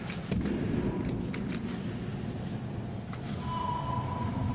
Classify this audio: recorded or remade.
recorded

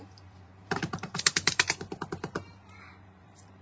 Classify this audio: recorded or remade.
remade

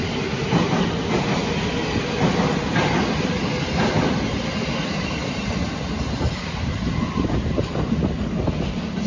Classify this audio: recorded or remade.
recorded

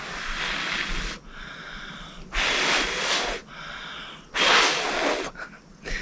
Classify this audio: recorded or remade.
recorded